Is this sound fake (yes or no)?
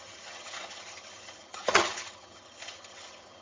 yes